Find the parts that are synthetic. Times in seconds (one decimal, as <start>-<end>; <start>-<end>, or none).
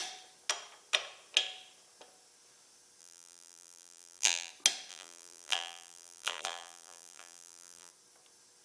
3.0-4.5; 4.9-7.9